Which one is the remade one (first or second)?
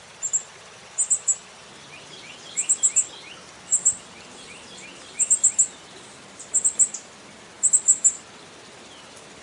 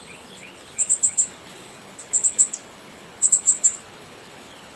second